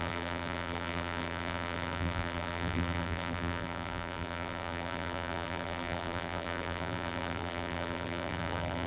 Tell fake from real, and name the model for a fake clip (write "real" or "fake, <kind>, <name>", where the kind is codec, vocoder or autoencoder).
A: fake, vocoder, BigVGAN v2